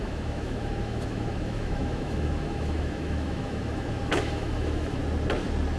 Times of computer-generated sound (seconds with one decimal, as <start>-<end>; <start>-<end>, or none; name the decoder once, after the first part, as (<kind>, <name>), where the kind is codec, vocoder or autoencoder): 0.0-5.0 (autoencoder, DAC-VAE)